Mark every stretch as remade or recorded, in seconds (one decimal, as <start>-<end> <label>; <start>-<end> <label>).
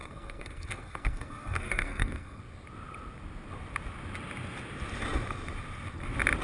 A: 0.0-2.4 remade; 2.4-6.4 recorded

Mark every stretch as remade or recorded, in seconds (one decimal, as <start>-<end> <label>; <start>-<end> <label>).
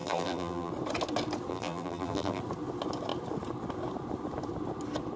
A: 0.0-0.7 remade; 0.7-1.5 recorded; 1.5-2.4 remade; 2.4-5.2 recorded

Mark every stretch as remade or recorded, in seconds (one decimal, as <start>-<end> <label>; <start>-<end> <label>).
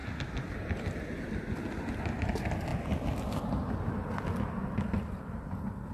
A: 0.0-5.9 recorded